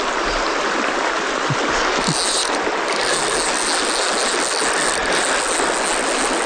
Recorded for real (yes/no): yes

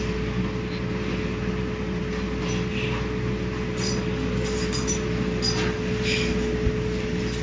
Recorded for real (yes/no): yes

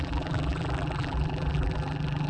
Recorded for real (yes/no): no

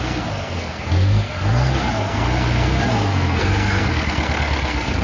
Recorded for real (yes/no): no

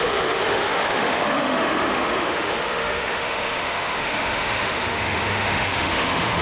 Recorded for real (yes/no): no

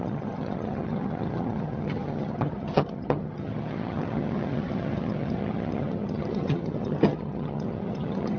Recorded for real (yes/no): no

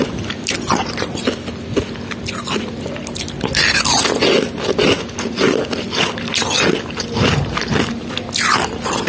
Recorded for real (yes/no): yes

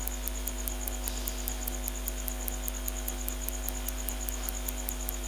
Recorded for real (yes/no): yes